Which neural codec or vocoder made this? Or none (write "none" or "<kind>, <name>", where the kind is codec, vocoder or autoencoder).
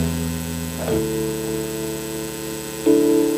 none